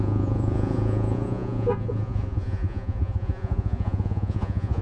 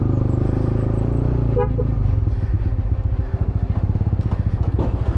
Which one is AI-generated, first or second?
first